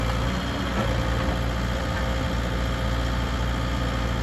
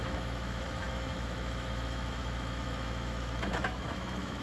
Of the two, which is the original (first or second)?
first